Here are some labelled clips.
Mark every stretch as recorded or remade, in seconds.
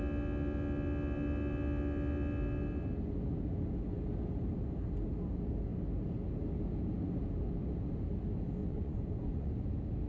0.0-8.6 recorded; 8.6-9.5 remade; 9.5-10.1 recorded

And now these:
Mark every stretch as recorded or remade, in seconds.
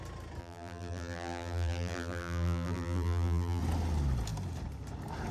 0.0-0.4 recorded; 0.4-3.6 remade; 3.6-5.3 recorded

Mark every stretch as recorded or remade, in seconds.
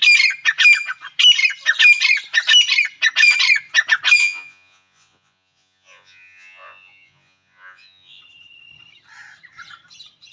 0.0-4.2 recorded; 4.2-8.2 remade; 8.2-10.3 recorded